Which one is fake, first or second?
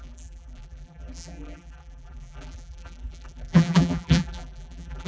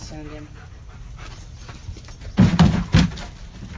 first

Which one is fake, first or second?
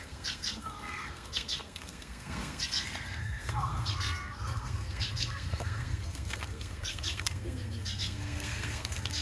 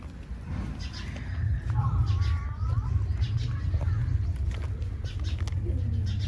first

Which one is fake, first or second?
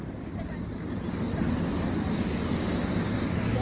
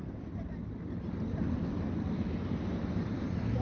second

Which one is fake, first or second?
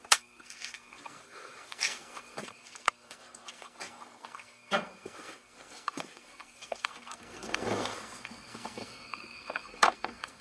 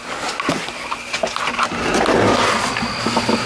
first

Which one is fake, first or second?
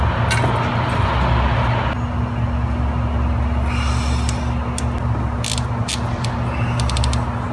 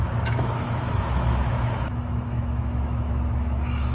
second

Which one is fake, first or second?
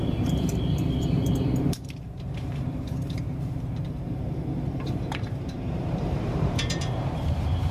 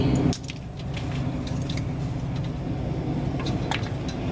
first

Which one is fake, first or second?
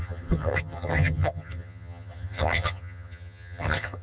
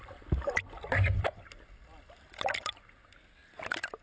first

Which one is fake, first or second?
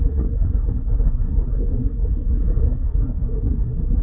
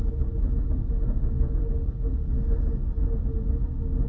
first